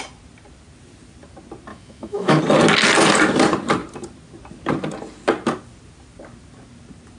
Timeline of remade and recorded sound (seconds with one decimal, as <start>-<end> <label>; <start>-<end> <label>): 0.0-1.7 recorded; 1.7-2.4 remade; 2.4-7.2 recorded